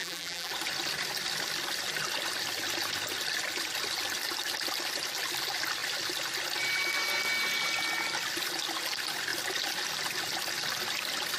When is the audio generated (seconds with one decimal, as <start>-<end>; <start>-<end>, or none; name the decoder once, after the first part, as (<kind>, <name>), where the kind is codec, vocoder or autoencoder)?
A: 0.0-0.5 (vocoder, BigVGAN v2)